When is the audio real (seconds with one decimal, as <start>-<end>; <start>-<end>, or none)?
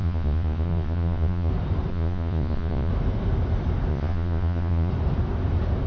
1.5-1.9; 2.9-3.9; 4.9-5.9